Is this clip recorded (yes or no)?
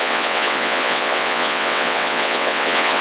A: no